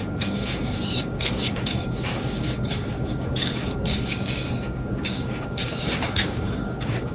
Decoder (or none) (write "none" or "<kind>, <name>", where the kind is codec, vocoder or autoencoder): codec, DAC